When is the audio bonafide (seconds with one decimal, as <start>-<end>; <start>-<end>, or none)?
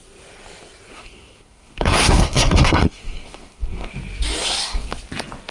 0.0-0.9; 3.9-4.4; 5.0-5.5